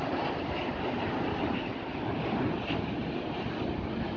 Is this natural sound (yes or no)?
yes